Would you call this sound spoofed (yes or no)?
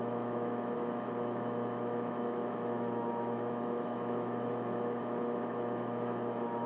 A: yes